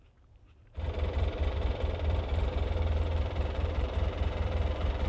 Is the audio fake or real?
fake